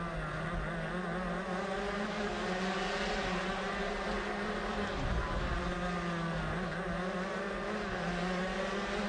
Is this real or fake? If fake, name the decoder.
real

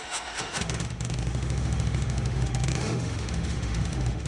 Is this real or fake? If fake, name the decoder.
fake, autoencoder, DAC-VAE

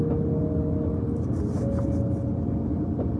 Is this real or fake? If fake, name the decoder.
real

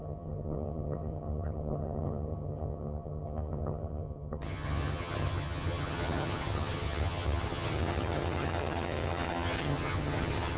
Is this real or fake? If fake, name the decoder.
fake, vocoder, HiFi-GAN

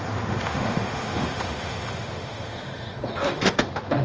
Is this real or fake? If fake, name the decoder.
fake, autoencoder, DAC-VAE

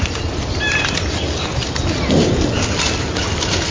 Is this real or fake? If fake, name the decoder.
real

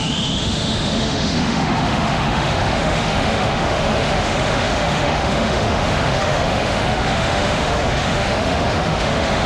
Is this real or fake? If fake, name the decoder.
fake, autoencoder, DAC-VAE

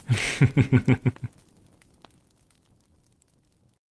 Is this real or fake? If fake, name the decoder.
real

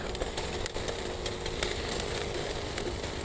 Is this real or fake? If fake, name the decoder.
real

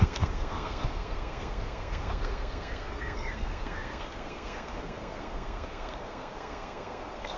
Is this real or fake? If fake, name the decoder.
fake, codec, SNAC